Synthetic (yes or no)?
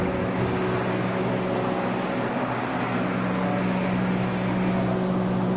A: no